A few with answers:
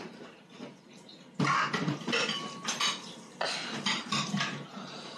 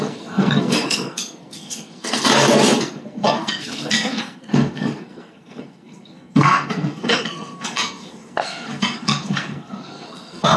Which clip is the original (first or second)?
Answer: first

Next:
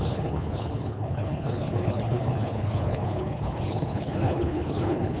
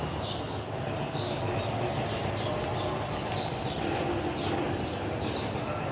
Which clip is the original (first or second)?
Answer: second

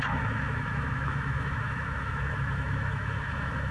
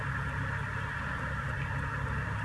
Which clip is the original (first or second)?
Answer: second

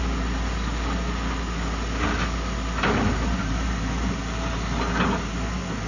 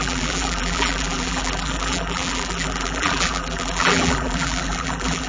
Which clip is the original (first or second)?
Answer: first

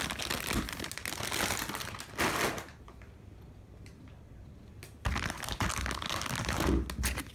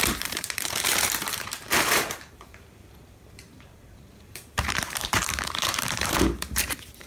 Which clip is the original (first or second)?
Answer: first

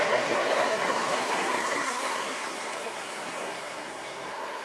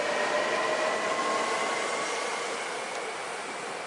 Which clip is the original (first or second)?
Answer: second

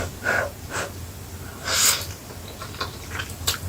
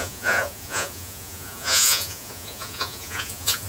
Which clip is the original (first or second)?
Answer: first